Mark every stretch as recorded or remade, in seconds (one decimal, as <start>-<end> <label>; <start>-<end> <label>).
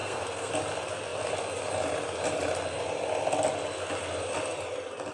0.0-0.5 remade; 0.5-5.1 recorded